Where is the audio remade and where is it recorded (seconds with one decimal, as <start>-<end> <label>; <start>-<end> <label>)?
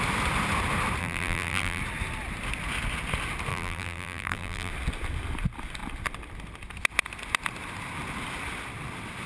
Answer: 0.0-1.0 recorded; 1.0-1.8 remade; 1.8-3.5 recorded; 3.5-4.7 remade; 4.7-9.3 recorded